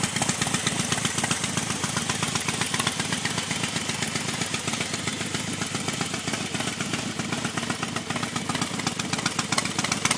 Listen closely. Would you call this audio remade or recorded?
recorded